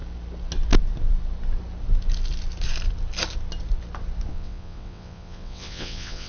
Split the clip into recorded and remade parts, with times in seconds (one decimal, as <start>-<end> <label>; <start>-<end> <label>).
0.0-4.3 recorded; 4.3-6.3 remade